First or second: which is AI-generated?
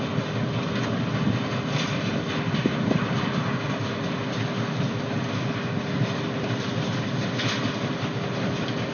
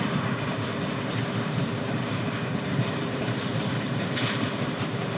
second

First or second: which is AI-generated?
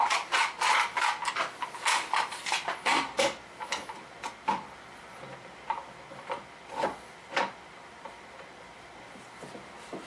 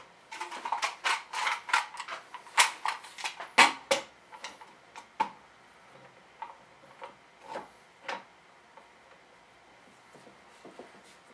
first